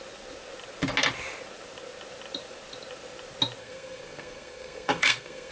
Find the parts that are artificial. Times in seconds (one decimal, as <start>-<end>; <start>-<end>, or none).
3.6-5.5